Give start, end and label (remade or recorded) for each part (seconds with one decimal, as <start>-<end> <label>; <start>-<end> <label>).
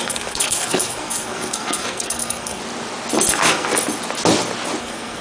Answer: 0.0-2.6 remade; 2.6-3.3 recorded; 3.3-3.7 remade; 3.7-4.8 recorded; 4.8-5.2 remade